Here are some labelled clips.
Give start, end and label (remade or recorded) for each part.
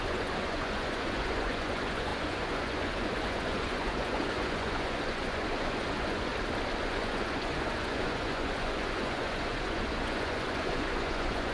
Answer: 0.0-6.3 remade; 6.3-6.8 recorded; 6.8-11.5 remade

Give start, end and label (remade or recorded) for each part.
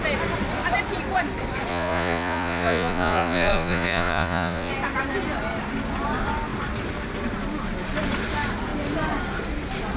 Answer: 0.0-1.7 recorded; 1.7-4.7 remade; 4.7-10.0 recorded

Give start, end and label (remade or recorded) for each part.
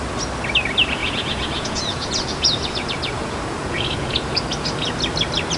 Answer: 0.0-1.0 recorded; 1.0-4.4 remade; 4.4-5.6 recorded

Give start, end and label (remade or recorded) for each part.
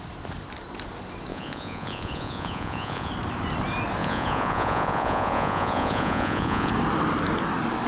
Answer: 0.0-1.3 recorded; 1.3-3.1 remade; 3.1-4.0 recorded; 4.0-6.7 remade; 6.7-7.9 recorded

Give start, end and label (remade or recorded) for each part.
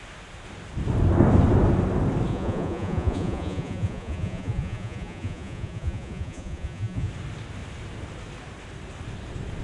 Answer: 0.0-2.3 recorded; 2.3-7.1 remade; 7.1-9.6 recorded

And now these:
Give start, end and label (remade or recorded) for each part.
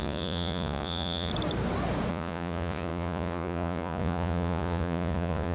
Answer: 0.0-1.3 remade; 1.3-2.1 recorded; 2.1-5.5 remade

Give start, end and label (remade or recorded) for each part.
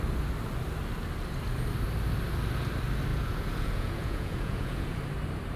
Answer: 0.0-3.1 recorded; 3.1-5.0 remade; 5.0-5.6 recorded